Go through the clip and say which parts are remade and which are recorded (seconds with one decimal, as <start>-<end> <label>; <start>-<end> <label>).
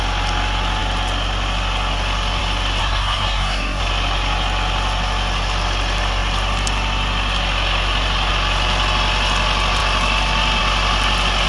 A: 0.0-2.8 recorded; 2.8-3.8 remade; 3.8-11.5 recorded